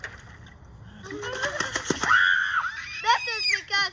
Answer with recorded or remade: recorded